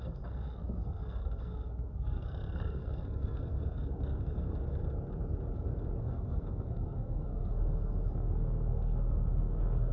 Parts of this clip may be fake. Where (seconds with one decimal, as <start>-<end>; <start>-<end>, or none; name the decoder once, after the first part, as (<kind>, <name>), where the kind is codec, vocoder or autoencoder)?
0.0-4.8 (codec, SNAC); 6.0-9.9